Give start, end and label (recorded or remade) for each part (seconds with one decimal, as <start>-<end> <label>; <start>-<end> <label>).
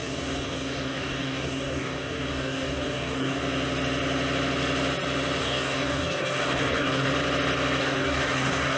0.0-3.4 remade; 3.4-5.4 recorded; 5.4-7.1 remade; 7.1-7.8 recorded; 7.8-8.8 remade